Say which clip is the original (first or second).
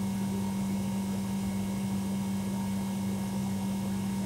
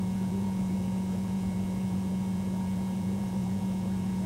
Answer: first